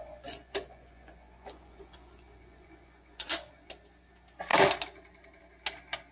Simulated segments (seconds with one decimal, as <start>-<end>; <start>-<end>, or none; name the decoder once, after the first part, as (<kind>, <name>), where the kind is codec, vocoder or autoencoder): 0.0-3.7 (vocoder, Vocos)

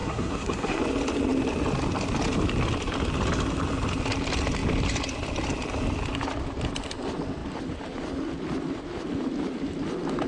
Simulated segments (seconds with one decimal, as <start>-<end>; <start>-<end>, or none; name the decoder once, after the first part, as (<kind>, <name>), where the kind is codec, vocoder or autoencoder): 0.0-0.8 (codec, SNAC)

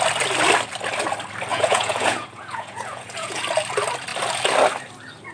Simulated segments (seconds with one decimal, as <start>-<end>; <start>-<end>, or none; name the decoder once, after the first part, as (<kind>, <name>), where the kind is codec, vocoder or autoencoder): 1.5-3.4 (vocoder, Vocos)

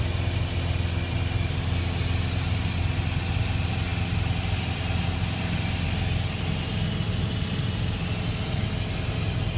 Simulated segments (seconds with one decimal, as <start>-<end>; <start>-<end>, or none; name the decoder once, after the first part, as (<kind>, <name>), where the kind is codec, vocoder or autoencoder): none

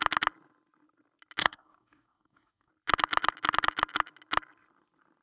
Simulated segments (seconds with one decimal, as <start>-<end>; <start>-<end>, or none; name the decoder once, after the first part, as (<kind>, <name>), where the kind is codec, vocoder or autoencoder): 1.4-2.7 (codec, DAC)